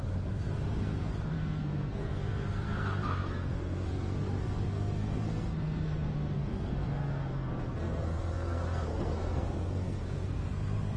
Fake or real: fake